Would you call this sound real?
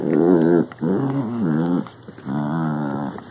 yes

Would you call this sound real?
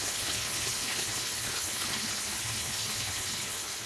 no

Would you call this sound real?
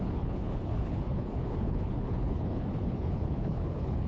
no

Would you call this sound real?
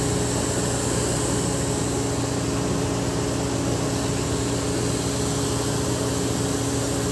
yes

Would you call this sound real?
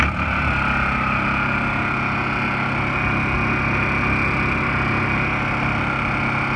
yes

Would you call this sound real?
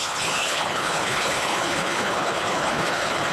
no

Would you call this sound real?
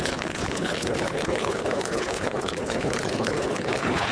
no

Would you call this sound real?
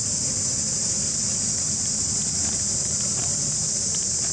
yes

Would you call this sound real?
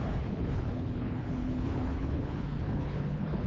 no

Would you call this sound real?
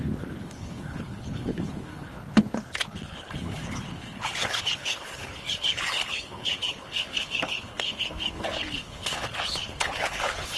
no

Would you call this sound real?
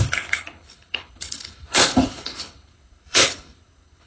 no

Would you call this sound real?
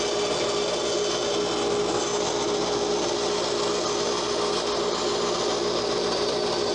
yes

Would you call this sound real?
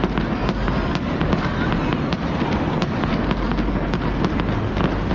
yes